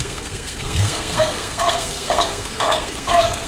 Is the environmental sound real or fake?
fake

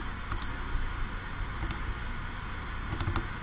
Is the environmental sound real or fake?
real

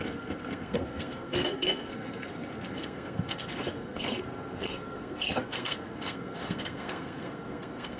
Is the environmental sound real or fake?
fake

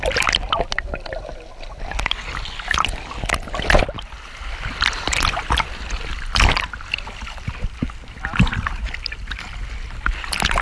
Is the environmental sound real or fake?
real